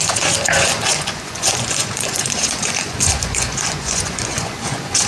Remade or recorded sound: remade